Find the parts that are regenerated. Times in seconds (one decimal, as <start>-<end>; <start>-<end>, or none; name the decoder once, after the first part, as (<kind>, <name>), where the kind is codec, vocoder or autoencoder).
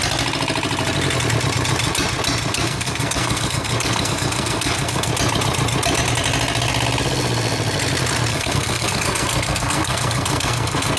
2.5-5.1 (codec, SNAC); 8.3-11.0